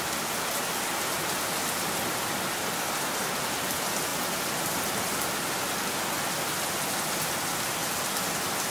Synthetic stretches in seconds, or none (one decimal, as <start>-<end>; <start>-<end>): none

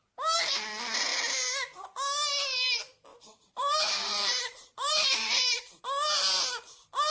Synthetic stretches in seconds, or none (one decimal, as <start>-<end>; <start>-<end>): 3.1-5.8

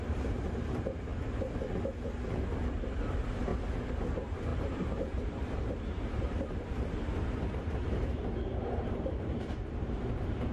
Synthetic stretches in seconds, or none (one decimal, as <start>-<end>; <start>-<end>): 0.0-1.1; 3.1-3.5; 4.1-10.5

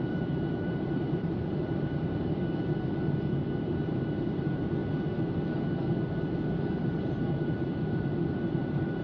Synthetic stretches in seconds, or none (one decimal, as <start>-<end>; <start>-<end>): 0.0-2.4; 3.6-4.8; 6.8-9.0

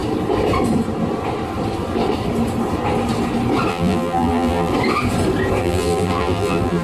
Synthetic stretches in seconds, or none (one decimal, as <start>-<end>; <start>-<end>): 3.7-4.7; 5.6-6.8

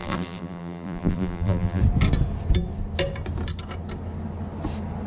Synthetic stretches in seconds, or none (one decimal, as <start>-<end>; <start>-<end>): 0.0-1.8